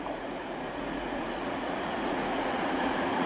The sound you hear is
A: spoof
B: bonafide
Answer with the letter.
A